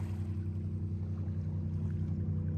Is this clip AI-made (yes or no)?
no